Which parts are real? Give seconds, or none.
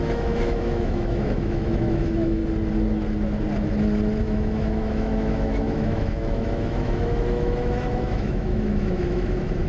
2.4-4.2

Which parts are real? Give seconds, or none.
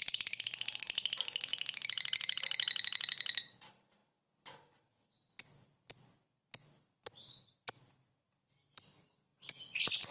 0.0-1.5; 2.4-10.1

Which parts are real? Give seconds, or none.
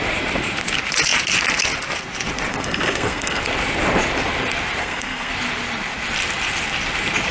0.0-2.5; 3.4-4.8; 5.3-7.3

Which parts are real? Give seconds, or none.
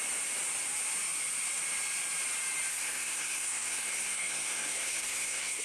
0.0-2.7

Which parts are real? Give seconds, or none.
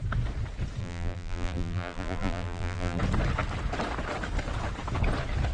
0.0-0.8; 3.0-5.5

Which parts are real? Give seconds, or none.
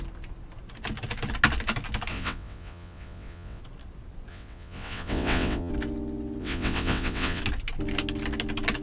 0.0-2.1; 3.6-4.3; 5.7-6.4; 7.4-8.8